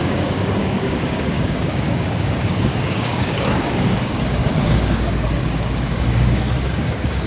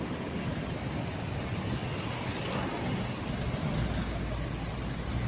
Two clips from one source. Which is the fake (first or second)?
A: first